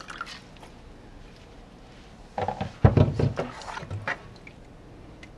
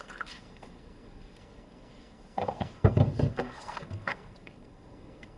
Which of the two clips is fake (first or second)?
second